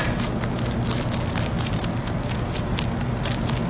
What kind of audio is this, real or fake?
real